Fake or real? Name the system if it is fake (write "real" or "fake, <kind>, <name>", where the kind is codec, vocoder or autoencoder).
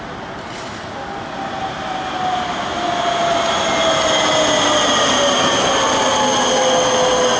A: real